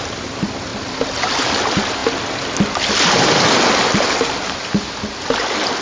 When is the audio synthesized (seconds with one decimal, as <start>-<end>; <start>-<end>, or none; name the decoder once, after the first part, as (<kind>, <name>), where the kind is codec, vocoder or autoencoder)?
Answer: none